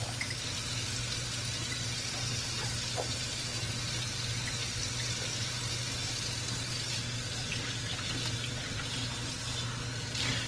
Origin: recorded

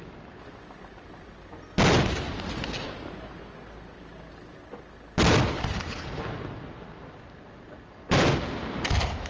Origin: recorded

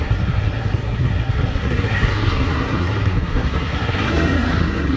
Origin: remade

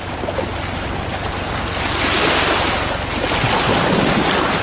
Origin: recorded